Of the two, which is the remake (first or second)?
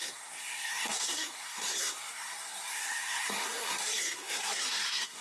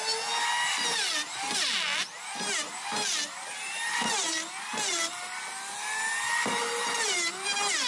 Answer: first